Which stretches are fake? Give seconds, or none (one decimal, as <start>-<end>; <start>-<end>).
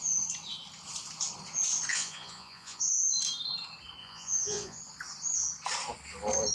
1.9-2.8; 4.0-4.8